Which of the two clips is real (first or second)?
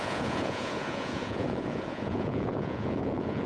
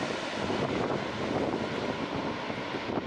second